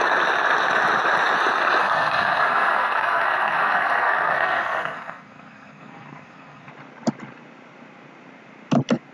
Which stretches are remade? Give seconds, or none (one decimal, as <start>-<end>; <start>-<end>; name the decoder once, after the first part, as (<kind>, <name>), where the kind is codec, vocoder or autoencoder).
1.8-6.7 (codec, SNAC)